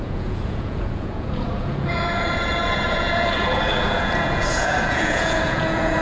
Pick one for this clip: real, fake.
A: fake